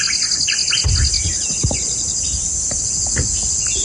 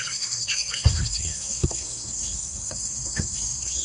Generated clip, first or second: second